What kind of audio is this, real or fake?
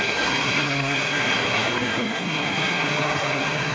fake